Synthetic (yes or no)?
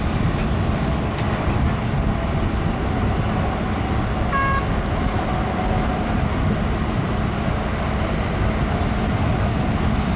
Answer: no